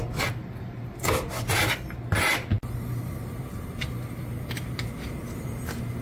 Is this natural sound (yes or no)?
yes